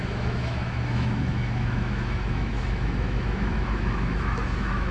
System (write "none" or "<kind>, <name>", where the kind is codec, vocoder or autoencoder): autoencoder, DAC-VAE